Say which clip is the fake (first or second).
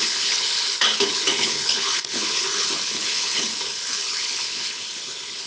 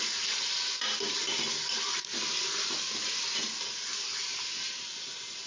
first